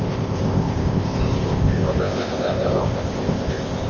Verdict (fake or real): fake